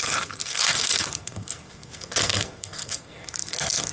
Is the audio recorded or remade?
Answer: remade